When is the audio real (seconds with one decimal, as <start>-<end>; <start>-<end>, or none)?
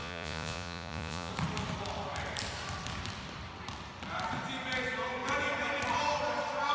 1.3-6.7